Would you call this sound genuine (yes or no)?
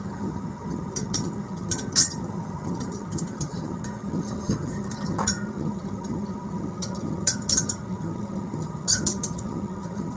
no